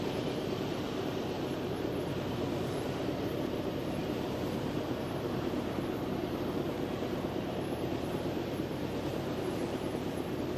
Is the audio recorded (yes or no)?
no